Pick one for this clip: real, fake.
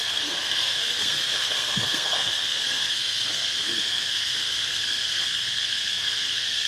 fake